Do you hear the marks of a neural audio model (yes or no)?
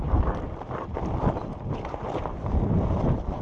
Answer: yes